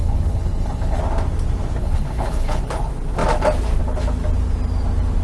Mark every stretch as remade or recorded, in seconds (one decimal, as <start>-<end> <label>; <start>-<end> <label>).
0.0-1.0 remade; 1.0-1.8 recorded; 1.8-2.6 remade; 2.6-5.2 recorded